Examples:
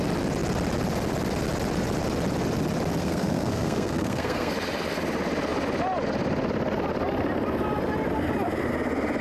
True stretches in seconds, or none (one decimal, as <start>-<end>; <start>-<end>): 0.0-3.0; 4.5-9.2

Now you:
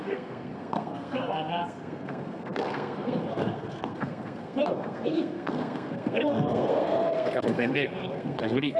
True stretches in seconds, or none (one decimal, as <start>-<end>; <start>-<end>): none

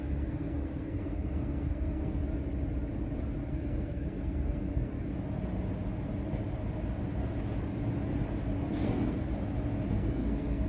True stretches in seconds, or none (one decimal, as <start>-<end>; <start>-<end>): 2.2-3.5; 4.9-8.7; 9.3-9.9

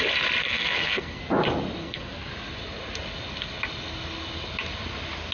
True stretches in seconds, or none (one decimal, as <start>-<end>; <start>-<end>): 0.0-0.4; 1.2-1.8; 2.3-5.3